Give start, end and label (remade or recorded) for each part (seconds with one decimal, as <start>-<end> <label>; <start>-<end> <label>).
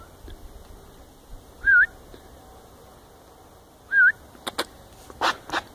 0.0-5.7 recorded